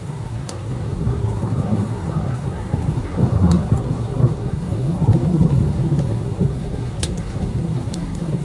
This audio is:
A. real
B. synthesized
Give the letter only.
B